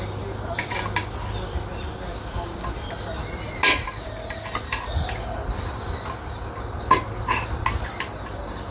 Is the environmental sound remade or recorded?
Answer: recorded